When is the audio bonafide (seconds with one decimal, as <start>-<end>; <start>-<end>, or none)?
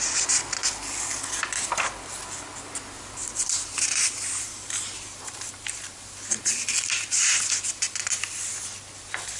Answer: 0.0-3.2; 7.2-9.4